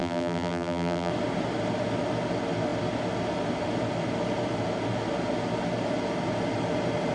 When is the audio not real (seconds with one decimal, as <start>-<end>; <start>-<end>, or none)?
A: 0.0-1.1